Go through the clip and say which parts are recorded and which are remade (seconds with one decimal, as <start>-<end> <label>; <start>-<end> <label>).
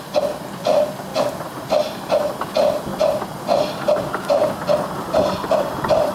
0.0-6.1 recorded